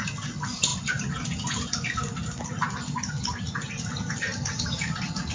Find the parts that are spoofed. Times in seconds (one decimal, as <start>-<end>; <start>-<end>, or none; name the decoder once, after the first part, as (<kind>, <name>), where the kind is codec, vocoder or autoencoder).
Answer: none